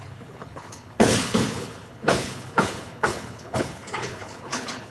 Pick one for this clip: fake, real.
fake